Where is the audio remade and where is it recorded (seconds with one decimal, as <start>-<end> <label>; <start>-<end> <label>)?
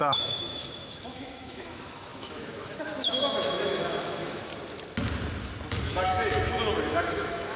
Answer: 0.0-4.5 remade; 4.5-6.0 recorded; 6.0-7.6 remade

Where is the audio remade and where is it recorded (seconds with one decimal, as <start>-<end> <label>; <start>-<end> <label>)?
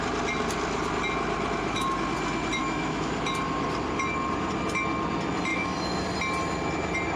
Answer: 0.0-2.6 recorded; 2.6-3.1 remade; 3.1-5.5 recorded; 5.5-6.0 remade; 6.0-7.2 recorded